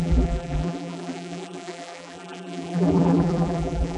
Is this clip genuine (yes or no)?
no